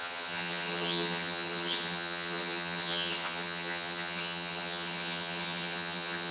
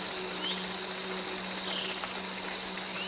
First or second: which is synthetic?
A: first